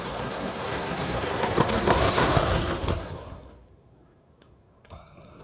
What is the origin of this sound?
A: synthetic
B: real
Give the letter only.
A